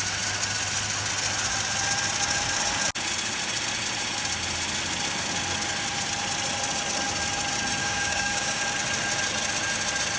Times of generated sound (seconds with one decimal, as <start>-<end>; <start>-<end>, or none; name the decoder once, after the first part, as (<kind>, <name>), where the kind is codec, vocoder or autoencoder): 7.8-8.6 (codec, DAC)